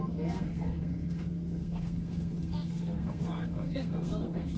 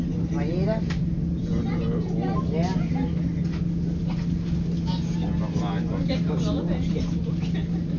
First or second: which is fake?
first